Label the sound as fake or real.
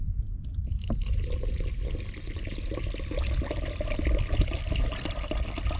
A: real